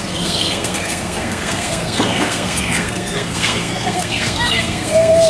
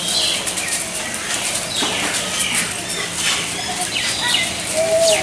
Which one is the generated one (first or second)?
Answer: first